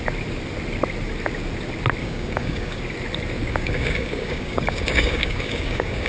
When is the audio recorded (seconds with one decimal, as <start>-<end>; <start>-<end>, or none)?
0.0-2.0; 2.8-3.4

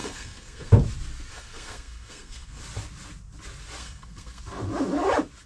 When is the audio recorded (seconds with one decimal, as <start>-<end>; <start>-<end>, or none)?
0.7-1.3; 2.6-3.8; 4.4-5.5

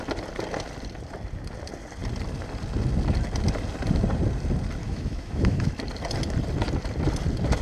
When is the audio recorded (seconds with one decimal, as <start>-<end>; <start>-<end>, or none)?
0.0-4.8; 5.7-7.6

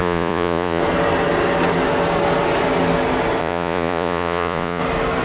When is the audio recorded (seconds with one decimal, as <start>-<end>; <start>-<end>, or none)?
0.8-3.4; 4.8-5.2

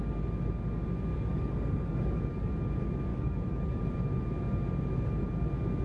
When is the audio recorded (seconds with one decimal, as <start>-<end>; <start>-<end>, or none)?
0.0-1.1; 2.5-3.1; 3.8-5.8

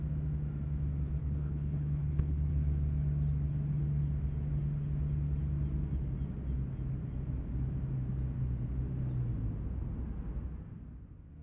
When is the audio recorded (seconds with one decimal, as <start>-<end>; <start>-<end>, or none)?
0.0-1.2; 2.5-11.4